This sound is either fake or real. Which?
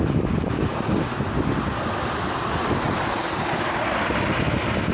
real